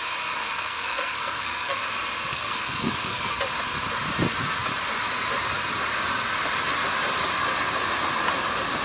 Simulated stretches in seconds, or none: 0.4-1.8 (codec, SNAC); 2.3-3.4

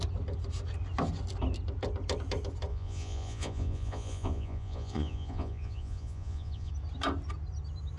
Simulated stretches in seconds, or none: 2.7-6.7 (vocoder, Vocos)

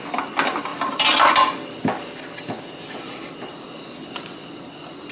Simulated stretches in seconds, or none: 0.7-3.8 (vocoder, BigVGAN v2)

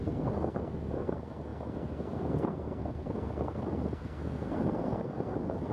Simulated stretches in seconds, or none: 0.0-5.7 (codec, SNAC)